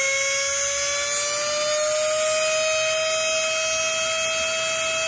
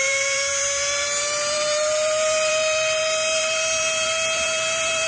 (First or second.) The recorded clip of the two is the first